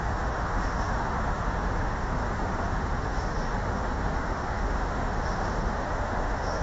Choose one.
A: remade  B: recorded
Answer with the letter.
A